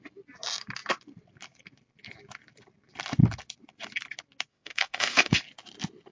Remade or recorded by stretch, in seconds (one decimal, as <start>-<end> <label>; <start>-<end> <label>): 0.0-4.5 recorded; 4.5-5.4 remade; 5.4-6.1 recorded

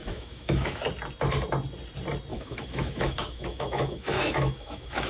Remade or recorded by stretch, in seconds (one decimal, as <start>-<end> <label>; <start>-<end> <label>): 0.0-0.8 remade; 0.8-2.3 recorded; 2.3-5.1 remade

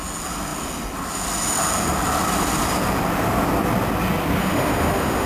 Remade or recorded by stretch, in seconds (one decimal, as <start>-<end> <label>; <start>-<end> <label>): 0.0-4.4 recorded; 4.4-5.3 remade

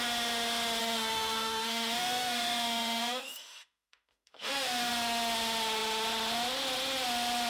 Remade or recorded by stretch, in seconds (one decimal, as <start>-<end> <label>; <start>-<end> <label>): 0.0-0.8 recorded; 0.8-4.9 remade; 4.9-7.5 recorded

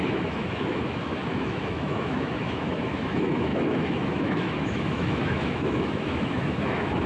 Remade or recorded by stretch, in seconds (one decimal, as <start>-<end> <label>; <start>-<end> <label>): 0.0-7.1 remade

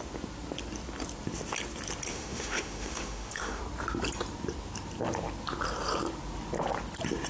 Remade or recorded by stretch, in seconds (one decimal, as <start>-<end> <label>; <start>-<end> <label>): 0.0-2.1 recorded; 2.1-3.6 remade; 3.6-7.3 recorded

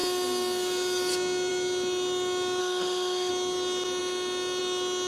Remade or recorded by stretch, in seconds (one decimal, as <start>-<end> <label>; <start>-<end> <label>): 0.0-2.6 recorded; 2.6-3.3 remade; 3.3-5.1 recorded

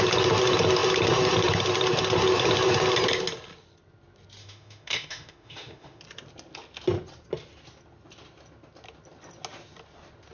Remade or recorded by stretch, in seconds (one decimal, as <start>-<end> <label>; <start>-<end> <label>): 0.0-4.4 recorded; 4.4-6.0 remade; 6.0-10.3 recorded